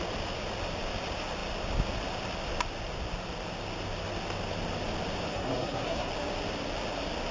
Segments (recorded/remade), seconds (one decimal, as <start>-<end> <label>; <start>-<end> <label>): 0.0-5.3 recorded; 5.3-6.1 remade; 6.1-7.3 recorded